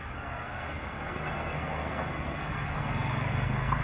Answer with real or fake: fake